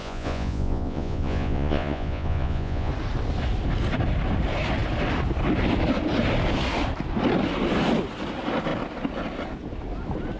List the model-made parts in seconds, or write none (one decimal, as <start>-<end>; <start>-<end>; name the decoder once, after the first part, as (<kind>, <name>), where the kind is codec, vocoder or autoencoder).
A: 0.0-2.9 (vocoder, Vocos)